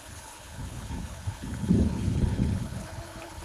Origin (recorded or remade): remade